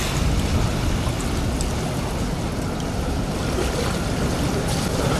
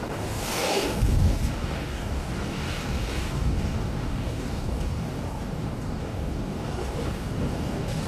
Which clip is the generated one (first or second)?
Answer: second